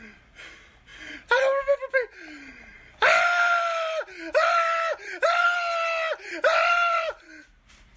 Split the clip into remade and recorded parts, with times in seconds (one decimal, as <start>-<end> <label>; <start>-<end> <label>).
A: 0.0-8.0 recorded